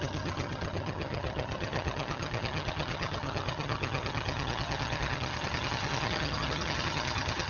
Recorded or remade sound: remade